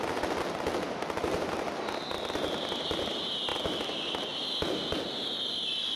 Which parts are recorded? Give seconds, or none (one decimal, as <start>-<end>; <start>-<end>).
0.0-6.0